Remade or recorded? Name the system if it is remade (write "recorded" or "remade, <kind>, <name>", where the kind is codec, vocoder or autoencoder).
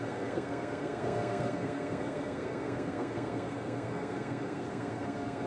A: remade, codec, SNAC